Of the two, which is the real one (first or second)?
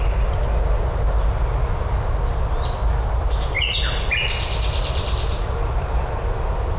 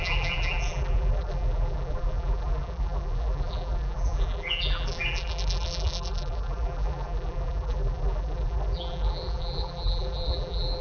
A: first